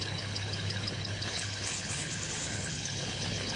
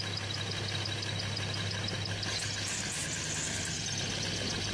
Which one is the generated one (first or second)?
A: first